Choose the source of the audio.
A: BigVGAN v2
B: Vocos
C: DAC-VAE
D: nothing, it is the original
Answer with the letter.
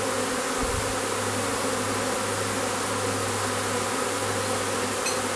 D